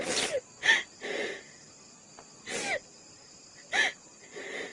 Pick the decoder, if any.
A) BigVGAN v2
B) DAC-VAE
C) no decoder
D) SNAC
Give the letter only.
C